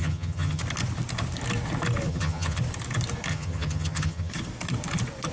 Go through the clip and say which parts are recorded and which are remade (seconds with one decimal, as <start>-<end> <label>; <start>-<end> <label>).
0.0-0.6 remade; 0.6-2.1 recorded; 2.1-2.6 remade; 2.6-3.3 recorded; 3.3-4.3 remade; 4.3-5.3 recorded